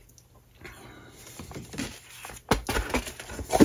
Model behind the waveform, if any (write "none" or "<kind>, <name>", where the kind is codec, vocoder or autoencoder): none